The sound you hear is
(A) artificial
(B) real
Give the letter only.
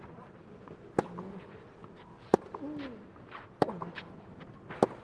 B